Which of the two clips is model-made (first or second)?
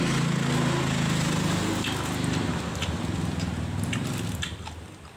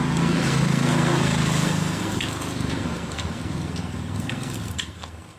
second